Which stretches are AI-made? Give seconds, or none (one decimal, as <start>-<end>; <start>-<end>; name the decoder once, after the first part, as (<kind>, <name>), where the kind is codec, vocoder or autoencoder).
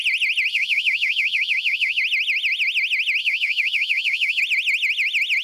0.5-2.0 (autoencoder, DAC-VAE); 3.2-4.4